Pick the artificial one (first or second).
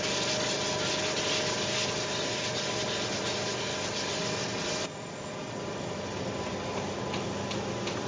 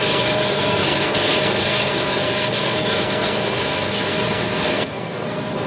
second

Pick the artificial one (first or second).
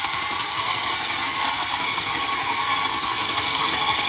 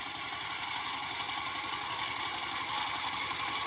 first